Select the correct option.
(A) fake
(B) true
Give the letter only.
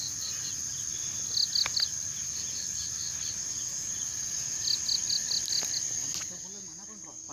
B